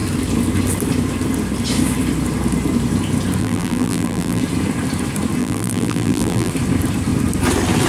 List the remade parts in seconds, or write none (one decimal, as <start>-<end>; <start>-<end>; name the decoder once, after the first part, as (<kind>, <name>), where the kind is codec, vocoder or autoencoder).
3.4-4.4 (vocoder, BigVGAN v2); 5.4-6.5

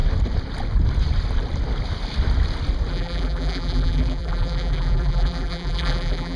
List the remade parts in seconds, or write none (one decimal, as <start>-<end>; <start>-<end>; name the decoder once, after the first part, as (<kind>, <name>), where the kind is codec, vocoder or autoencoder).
2.9-6.4 (vocoder, BigVGAN v2)

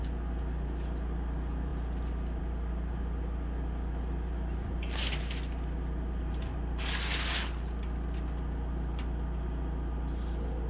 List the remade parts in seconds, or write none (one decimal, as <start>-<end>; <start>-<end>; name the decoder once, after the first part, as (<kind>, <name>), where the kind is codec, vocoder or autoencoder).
none